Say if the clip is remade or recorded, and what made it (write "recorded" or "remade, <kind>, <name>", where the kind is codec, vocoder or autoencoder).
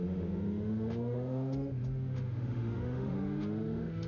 remade, autoencoder, DAC-VAE